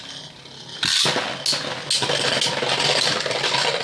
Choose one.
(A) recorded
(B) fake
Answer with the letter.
A